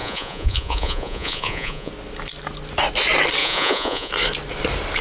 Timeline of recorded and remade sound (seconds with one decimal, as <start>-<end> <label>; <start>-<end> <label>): 0.0-1.9 remade; 1.9-3.4 recorded; 3.4-4.1 remade; 4.1-5.0 recorded